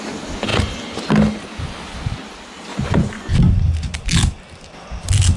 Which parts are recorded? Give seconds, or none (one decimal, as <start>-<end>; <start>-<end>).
0.0-2.7; 3.3-5.4